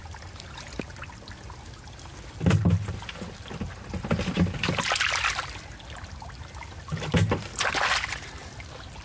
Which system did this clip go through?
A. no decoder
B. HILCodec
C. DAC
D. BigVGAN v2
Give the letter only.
A